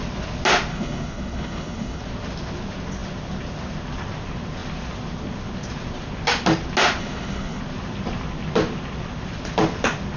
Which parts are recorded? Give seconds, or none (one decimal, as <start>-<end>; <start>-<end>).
0.0-0.7; 2.0-7.0; 7.6-10.2